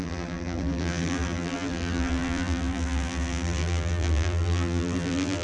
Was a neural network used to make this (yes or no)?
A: yes